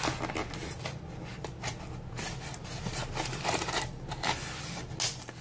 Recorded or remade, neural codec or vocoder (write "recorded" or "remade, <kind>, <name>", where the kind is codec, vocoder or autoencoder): recorded